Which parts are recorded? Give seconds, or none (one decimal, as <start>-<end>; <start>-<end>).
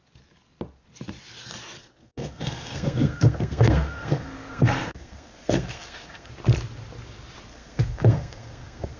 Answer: 0.0-1.8; 6.3-7.5